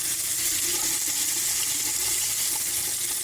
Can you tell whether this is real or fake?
real